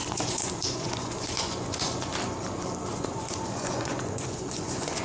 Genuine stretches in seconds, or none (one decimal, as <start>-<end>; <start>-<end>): 2.1-2.9